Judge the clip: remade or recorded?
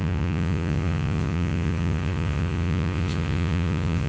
remade